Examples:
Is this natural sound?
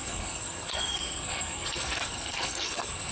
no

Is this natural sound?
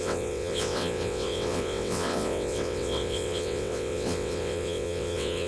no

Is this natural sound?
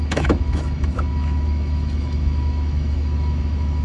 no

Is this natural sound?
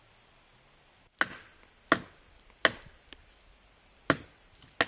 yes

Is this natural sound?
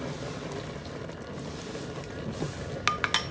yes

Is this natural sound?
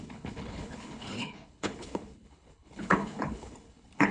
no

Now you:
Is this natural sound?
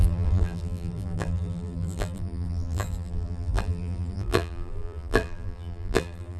no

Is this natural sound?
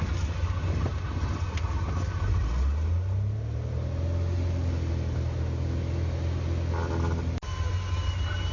yes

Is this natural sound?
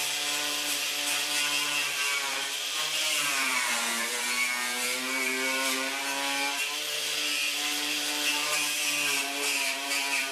no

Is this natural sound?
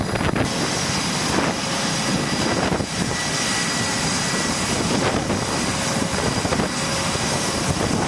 yes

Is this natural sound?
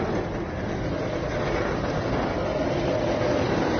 yes